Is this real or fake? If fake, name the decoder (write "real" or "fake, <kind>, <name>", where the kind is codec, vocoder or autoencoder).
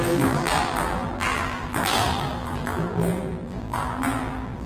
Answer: fake, vocoder, BigVGAN v2